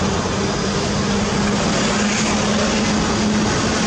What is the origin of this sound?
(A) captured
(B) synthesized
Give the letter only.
A